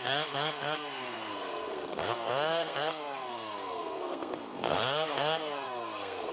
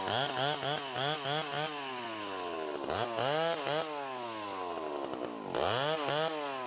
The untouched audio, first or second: second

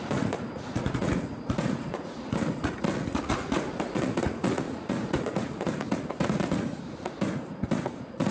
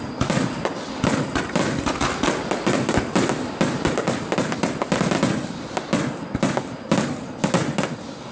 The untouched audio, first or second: second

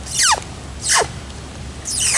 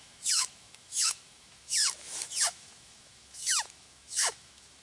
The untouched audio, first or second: first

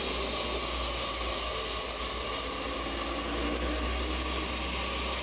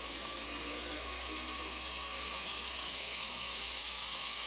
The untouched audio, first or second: first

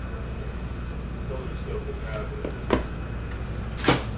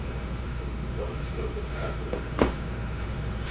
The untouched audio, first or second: first